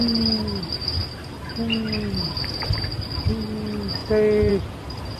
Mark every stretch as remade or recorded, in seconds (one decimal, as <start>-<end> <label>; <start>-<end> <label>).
0.0-5.2 recorded